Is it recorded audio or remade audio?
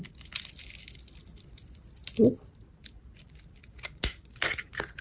recorded